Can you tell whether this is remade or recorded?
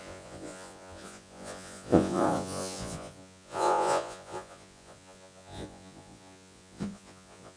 remade